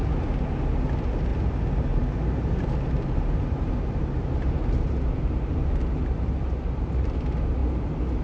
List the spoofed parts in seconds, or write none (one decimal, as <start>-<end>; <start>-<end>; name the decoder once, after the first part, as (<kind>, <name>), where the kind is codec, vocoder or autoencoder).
1.3-5.7 (vocoder, BigVGAN v2)